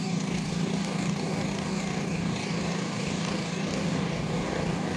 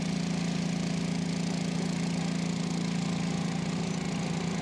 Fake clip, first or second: first